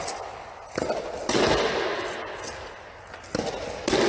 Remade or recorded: recorded